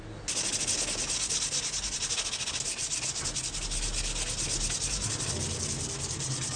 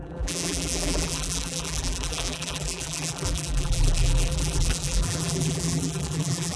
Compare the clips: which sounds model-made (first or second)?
second